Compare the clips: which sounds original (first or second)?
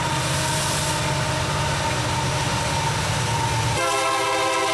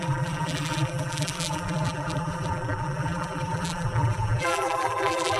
first